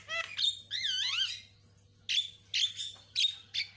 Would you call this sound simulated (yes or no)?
no